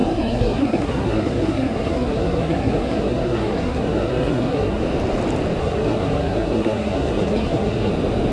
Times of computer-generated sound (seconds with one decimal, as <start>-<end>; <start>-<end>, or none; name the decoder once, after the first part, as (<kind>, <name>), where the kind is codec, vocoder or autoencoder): 0.0-4.8 (codec, SNAC); 5.6-7.9

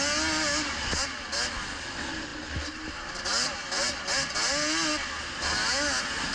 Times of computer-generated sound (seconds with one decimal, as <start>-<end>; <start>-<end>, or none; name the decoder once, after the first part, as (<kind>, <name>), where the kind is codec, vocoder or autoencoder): none

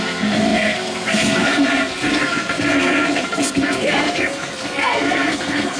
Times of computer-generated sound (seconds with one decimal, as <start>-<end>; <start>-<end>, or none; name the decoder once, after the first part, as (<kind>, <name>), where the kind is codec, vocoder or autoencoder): 0.0-5.8 (codec, SNAC)

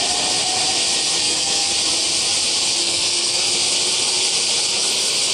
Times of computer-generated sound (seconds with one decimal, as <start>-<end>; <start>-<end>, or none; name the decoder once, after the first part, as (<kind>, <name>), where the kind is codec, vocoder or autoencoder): 1.2-1.7 (codec, SNAC); 2.8-3.5

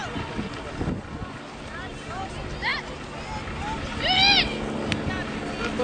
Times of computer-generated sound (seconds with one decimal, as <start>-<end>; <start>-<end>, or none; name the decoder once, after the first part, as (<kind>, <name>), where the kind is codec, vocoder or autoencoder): none

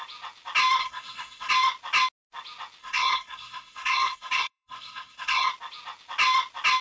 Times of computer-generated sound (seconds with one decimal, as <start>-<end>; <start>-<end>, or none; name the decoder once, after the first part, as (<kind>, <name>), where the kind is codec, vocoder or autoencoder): 0.8-1.5 (codec, SNAC); 2.8-5.5

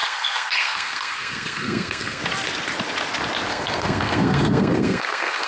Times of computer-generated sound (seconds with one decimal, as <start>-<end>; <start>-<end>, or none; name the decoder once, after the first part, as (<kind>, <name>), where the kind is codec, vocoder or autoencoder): 0.0-2.2 (codec, SNAC); 3.5-5.5

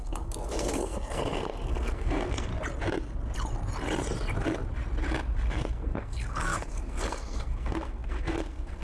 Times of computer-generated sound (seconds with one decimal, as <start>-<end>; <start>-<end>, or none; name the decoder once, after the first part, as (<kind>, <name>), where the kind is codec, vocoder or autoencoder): 0.0-2.5 (codec, SNAC); 5.5-8.8